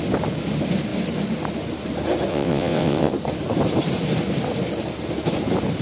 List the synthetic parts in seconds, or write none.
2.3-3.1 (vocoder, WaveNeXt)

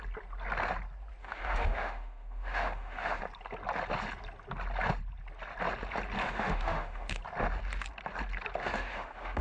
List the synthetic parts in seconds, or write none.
1.2-3.2 (autoencoder, DAC-VAE); 6.2-7.2; 8.6-9.4

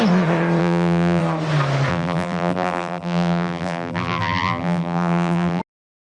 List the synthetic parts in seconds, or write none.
0.6-1.2 (vocoder, BigVGAN v2); 1.9-5.6

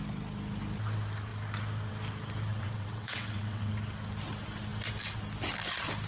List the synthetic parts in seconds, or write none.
2.5-3.7 (vocoder, WaveNeXt)